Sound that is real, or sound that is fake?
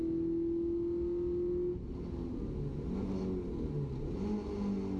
real